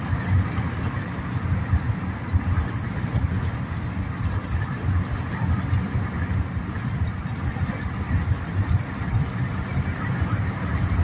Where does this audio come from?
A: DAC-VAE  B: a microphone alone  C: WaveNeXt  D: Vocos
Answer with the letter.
B